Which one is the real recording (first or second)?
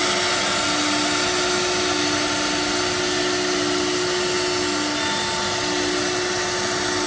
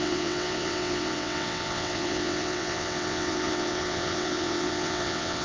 first